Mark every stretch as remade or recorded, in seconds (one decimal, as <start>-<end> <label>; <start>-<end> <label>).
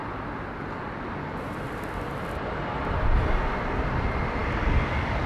0.0-5.3 recorded